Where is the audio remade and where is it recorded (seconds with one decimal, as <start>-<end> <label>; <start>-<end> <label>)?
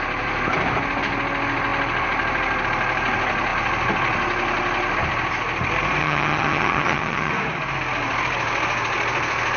0.0-6.0 recorded; 6.0-7.3 remade; 7.3-9.6 recorded